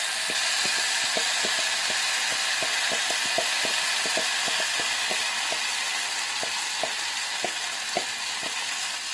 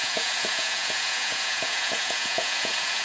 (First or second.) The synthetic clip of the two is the second